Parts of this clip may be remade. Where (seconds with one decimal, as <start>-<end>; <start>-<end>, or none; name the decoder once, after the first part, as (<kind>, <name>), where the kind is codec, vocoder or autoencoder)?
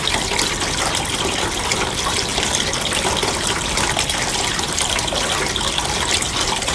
none